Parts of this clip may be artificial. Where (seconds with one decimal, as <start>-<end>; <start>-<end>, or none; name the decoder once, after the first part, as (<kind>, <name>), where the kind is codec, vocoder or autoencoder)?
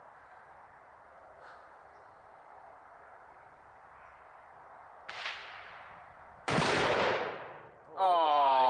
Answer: 0.0-8.7 (vocoder, BigVGAN v2)